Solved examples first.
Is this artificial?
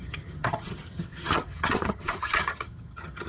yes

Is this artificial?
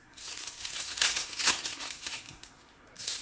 yes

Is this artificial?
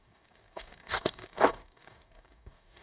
yes